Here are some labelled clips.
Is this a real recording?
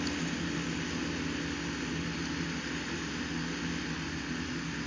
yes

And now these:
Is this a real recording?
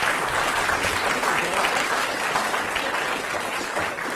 yes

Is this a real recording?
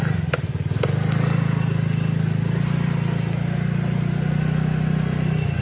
yes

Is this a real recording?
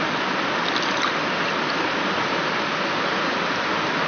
yes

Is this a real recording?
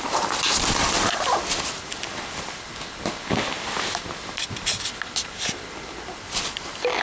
yes